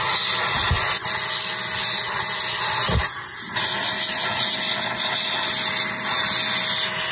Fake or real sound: real